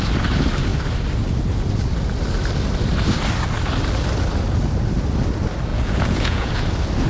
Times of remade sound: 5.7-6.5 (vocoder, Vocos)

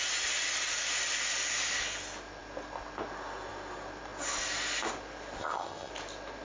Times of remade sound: 5.4-5.9 (vocoder, HiFi-GAN)

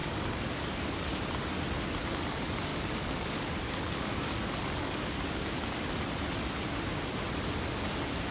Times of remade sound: 0.0-1.2 (codec, DAC); 2.7-5.6

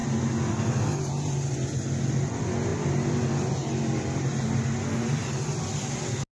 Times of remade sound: none